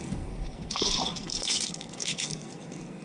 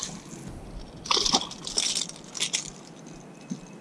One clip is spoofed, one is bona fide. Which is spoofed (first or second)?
first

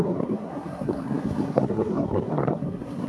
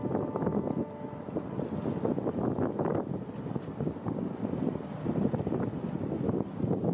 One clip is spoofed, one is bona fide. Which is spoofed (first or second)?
first